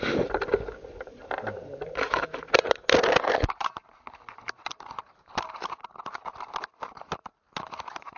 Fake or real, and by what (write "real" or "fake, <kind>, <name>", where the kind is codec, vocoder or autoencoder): real